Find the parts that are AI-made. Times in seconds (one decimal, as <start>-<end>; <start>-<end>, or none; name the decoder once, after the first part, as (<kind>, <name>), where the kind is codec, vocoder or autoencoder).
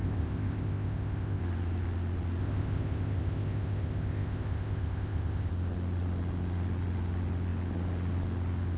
0.0-1.4 (codec, ZipCodec); 2.4-5.5